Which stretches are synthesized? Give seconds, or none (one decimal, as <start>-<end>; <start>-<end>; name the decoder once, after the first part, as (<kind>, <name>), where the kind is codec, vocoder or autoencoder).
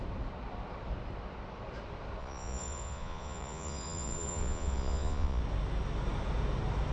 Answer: 2.2-5.4 (vocoder, Vocos)